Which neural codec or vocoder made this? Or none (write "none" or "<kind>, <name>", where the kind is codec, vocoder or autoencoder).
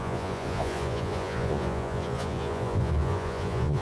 vocoder, Vocos